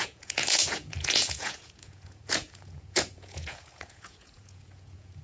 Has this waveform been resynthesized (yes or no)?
yes